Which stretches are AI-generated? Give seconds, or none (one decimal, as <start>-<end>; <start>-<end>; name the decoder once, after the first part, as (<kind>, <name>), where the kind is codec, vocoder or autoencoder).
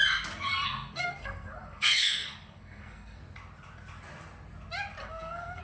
0.5-3.2 (codec, SNAC); 5.0-5.6